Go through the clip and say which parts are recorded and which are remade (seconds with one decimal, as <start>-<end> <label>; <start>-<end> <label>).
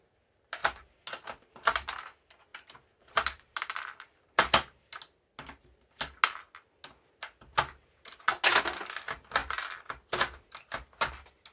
0.0-11.5 recorded